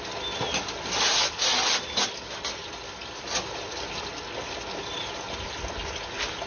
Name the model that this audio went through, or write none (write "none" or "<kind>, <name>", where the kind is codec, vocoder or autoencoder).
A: none